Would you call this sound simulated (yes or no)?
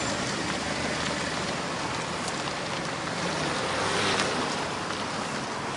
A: no